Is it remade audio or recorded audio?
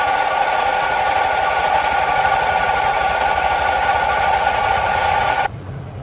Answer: remade